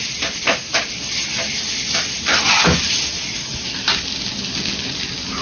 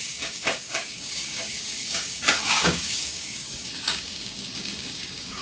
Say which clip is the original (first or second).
first